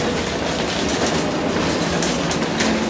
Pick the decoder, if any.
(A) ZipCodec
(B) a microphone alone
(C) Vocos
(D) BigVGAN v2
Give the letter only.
B